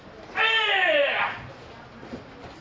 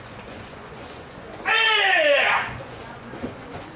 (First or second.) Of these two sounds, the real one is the first